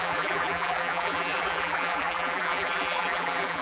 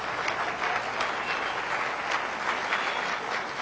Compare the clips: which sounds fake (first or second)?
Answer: first